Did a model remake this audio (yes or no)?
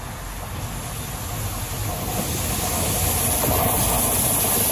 no